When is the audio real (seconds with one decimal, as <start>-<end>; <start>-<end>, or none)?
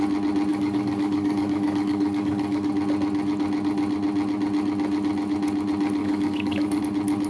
0.0-0.5; 2.7-6.0; 6.8-7.3